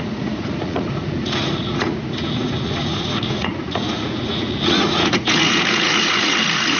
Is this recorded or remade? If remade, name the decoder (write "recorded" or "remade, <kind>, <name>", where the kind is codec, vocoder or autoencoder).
remade, vocoder, Vocos